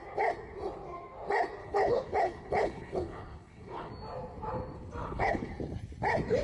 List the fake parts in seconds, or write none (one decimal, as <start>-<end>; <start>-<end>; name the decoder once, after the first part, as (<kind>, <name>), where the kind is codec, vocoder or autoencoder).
1.6-3.9 (codec, HILCodec); 5.0-5.5